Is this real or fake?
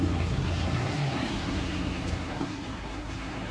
fake